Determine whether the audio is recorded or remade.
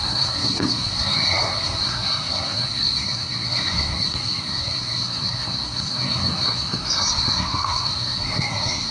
remade